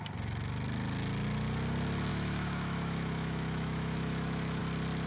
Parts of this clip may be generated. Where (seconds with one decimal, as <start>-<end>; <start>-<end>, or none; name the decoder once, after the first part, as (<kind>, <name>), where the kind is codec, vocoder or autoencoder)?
2.1-4.6 (autoencoder, DAC-VAE)